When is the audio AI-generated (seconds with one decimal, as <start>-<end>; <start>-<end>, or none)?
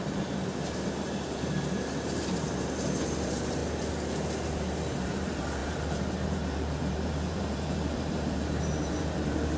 0.0-3.6; 4.9-9.6